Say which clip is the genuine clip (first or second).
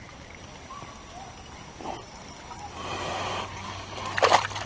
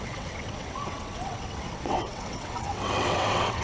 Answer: first